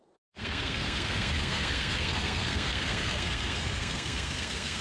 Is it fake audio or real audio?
fake